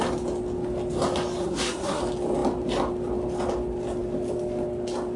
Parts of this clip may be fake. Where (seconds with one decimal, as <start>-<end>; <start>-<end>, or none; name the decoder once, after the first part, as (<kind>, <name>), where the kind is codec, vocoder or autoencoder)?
1.4-2.0 (codec, SNAC)